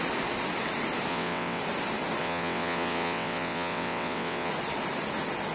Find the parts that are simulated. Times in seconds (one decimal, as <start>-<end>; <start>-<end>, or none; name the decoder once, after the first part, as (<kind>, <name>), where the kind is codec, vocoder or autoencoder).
1.1-1.6 (vocoder, WaveNeXt); 2.2-4.5